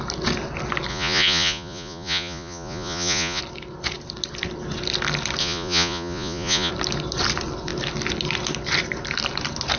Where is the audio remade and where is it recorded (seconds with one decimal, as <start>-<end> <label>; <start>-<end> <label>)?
0.0-0.9 recorded; 0.9-3.4 remade; 3.4-5.4 recorded; 5.4-6.7 remade; 6.7-9.8 recorded

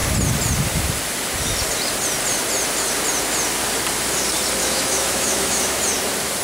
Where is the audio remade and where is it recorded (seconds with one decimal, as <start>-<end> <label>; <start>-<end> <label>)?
0.0-4.6 recorded; 4.6-5.8 remade; 5.8-6.4 recorded